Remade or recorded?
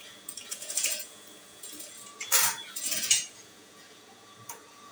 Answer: remade